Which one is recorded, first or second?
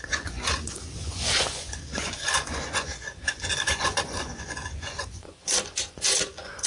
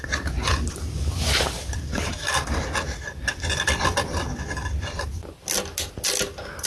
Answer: second